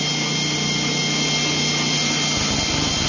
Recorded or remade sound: recorded